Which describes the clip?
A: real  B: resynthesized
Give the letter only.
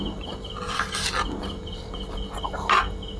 A